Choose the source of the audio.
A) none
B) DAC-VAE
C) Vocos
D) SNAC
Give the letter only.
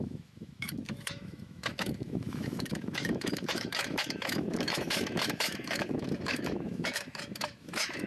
B